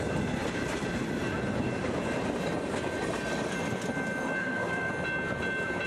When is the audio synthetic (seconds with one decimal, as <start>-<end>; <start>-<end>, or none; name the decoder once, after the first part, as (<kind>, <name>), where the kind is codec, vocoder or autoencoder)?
4.4-4.9 (codec, SNAC)